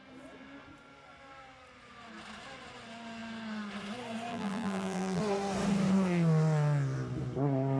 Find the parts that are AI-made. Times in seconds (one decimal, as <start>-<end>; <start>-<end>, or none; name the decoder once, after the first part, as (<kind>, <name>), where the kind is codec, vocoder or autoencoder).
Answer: 4.3-5.2 (vocoder, BigVGAN v2)